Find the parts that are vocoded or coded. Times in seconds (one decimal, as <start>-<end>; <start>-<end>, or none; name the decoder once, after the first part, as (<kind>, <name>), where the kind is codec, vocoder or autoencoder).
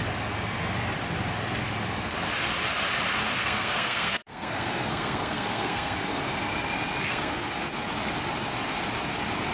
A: 3.4-6.2 (codec, SNAC); 7.1-7.7